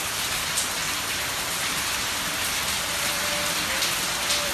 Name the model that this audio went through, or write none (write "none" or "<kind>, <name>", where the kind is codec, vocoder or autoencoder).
none